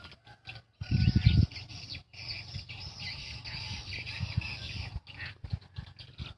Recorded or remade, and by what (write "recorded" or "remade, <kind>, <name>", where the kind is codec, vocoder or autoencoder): recorded